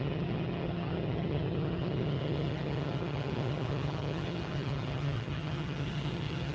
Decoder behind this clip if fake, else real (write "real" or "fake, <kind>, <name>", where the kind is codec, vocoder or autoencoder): fake, vocoder, HiFi-GAN